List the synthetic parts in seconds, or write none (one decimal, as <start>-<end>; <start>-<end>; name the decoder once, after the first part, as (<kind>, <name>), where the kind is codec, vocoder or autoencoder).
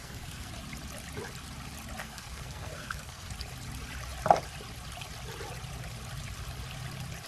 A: 0.0-0.5 (codec, SNAC); 2.0-3.3